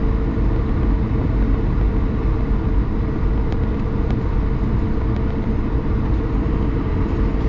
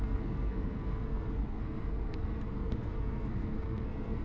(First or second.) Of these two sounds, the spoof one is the second